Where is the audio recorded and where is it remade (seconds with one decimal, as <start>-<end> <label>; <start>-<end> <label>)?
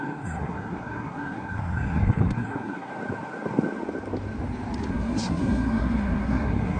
0.0-2.9 remade; 2.9-4.9 recorded; 4.9-6.8 remade